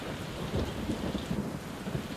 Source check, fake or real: fake